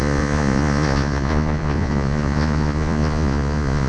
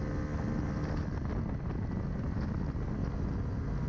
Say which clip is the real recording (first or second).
second